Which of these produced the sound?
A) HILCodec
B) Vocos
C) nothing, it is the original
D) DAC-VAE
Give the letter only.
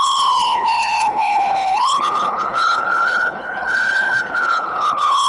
A